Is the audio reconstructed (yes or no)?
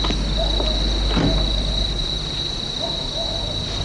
no